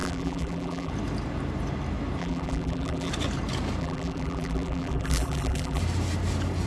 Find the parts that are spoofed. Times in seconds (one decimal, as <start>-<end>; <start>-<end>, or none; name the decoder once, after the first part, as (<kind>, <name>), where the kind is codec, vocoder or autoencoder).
0.0-0.9 (vocoder, BigVGAN v2); 2.2-3.1; 3.8-5.8